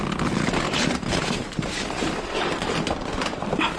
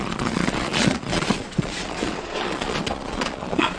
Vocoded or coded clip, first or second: second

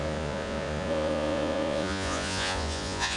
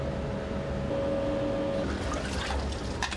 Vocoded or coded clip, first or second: first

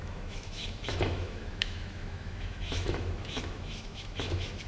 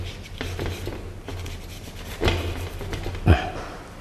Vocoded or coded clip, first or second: first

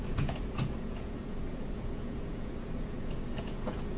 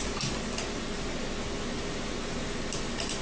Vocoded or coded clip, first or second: first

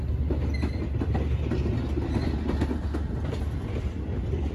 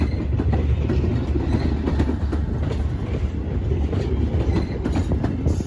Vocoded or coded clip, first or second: second